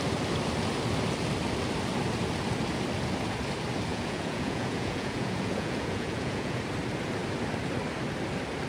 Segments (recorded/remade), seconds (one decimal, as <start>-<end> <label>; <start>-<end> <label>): 0.0-3.9 recorded; 3.9-6.6 remade; 6.6-8.7 recorded